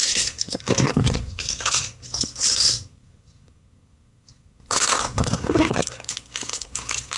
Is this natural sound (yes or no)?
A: no